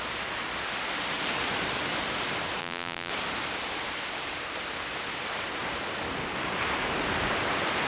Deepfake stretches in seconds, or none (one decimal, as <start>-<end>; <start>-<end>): 2.6-3.1